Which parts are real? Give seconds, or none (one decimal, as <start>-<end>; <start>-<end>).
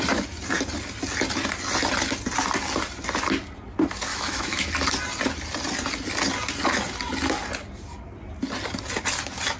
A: 0.0-4.1; 4.7-9.6